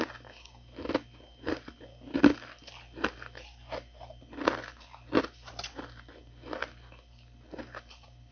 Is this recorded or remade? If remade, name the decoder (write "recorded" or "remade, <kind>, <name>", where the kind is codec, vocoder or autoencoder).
recorded